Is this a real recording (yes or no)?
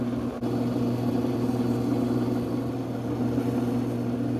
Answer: yes